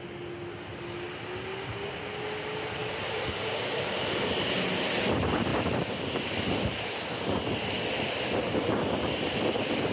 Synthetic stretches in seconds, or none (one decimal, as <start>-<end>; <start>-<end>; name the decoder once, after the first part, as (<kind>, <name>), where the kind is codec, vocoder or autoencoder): 2.8-3.4 (vocoder, BigVGAN v2)